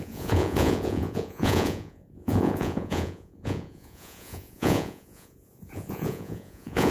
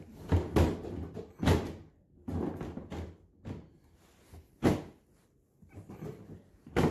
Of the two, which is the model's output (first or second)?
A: first